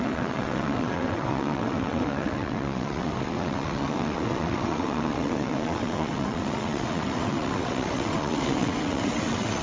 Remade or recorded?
remade